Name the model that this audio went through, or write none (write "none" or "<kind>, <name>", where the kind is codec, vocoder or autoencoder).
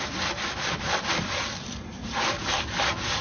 vocoder, BigVGAN v2